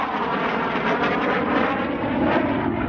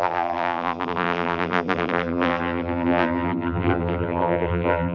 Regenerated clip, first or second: second